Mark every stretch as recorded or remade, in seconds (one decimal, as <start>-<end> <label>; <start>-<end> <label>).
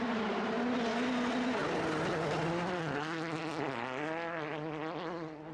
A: 0.0-5.5 recorded